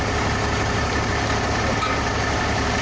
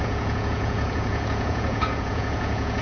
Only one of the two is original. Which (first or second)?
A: first